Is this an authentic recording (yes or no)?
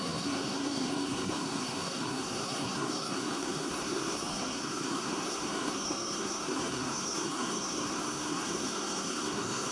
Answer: no